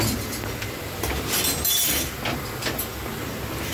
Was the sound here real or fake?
real